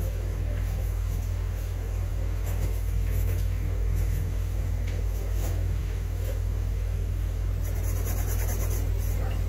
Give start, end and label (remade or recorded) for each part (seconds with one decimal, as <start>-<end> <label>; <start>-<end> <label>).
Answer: 0.0-7.5 remade; 7.5-9.5 recorded